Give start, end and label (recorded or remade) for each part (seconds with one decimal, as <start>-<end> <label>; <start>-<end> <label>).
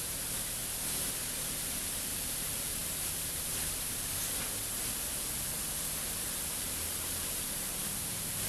0.0-0.6 remade; 0.6-2.1 recorded; 2.1-8.5 remade